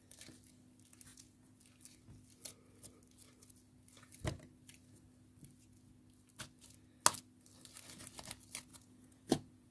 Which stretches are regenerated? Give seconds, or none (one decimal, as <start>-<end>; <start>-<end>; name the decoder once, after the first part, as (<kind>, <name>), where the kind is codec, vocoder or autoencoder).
1.1-1.6 (vocoder, Vocos); 8.7-9.7